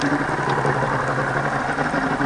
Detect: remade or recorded recorded